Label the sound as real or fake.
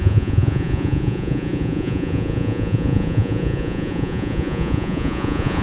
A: fake